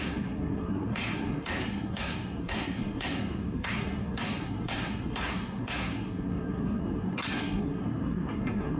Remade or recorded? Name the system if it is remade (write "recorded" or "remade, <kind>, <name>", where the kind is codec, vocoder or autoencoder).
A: remade, codec, SNAC